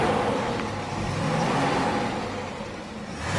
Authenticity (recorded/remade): recorded